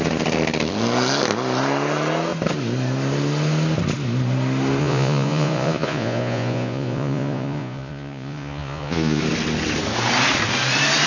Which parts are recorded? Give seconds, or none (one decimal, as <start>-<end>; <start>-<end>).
0.0-4.8; 9.2-11.1